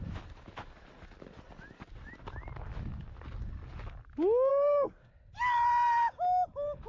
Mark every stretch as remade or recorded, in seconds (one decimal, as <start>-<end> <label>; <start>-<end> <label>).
0.0-4.5 recorded; 4.5-5.1 remade; 5.1-6.9 recorded